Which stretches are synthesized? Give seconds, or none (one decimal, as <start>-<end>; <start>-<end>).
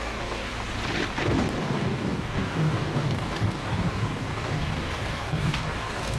0.0-0.5; 1.6-6.2